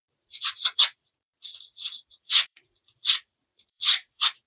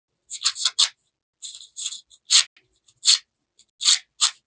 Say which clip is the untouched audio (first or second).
second